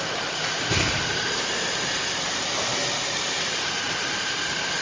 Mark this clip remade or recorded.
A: remade